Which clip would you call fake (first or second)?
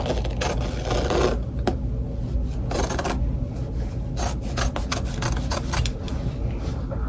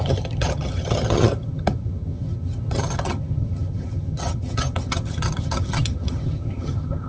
second